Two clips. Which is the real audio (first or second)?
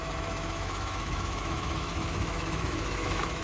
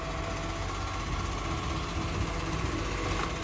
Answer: second